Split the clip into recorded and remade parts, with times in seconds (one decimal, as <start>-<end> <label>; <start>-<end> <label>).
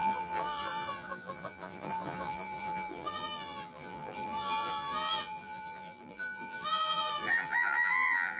0.0-8.4 remade